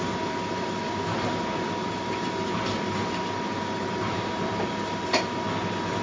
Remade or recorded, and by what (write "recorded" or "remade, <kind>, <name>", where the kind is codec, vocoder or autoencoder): recorded